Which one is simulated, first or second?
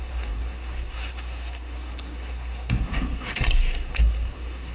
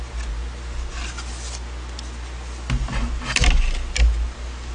first